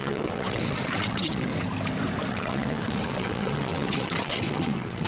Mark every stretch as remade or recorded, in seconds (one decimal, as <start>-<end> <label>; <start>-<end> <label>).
0.0-1.5 remade; 1.5-2.3 recorded; 2.3-5.1 remade